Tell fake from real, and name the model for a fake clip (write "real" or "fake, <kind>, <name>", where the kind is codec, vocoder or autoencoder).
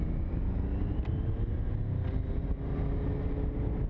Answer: real